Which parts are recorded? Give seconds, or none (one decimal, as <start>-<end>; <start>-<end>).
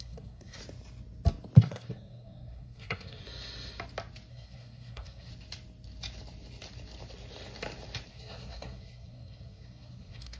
0.6-1.6; 3.2-4.3; 5.3-8.1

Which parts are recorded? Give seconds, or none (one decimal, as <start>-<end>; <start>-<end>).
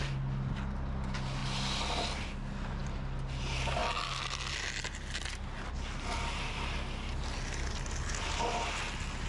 0.0-9.3